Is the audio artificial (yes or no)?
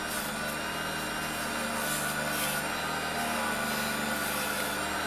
no